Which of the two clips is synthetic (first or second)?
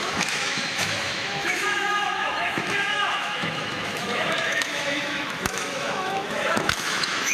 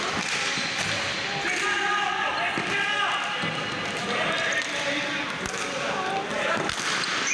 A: first